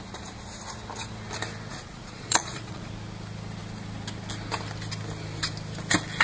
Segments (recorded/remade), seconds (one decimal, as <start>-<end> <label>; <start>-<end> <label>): 0.0-1.7 recorded; 1.7-2.9 remade; 2.9-6.2 recorded